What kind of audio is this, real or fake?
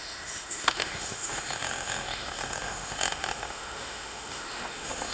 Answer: fake